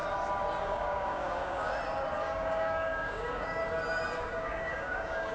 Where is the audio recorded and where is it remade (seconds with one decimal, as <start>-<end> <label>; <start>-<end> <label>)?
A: 0.0-0.6 recorded; 0.6-1.7 remade; 1.7-2.2 recorded; 2.2-3.6 remade; 3.6-4.2 recorded; 4.2-5.3 remade